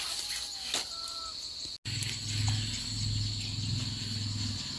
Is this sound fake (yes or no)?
no